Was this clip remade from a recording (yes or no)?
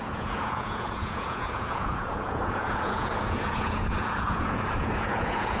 yes